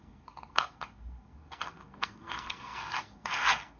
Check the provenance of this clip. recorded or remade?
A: remade